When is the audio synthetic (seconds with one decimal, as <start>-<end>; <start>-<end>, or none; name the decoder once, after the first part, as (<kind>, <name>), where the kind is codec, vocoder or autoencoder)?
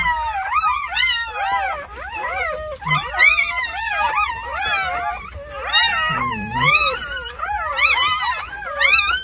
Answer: none